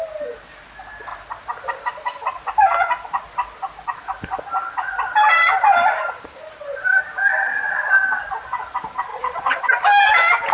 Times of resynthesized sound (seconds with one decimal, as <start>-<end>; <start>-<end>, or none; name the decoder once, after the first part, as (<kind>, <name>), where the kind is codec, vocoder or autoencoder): 9.1-9.6 (vocoder, Vocos)